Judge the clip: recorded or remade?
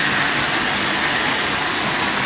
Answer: recorded